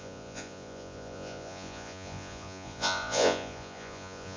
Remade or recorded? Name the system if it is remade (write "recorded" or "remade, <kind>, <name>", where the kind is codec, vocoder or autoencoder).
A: remade, vocoder, Vocos